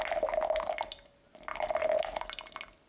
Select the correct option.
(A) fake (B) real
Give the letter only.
B